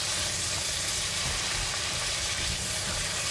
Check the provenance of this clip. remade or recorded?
remade